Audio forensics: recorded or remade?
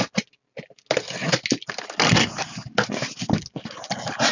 recorded